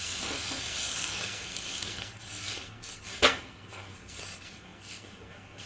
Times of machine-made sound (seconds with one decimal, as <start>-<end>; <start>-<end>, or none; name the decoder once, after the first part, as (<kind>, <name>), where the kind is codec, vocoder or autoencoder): 0.0-5.7 (codec, SNAC)